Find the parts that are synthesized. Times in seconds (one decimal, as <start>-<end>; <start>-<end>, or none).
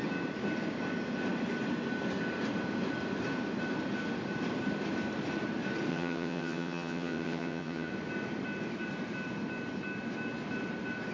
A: 5.9-7.9